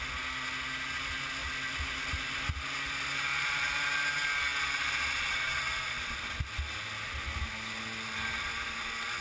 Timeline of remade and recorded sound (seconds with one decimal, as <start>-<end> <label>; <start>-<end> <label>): 0.0-9.2 recorded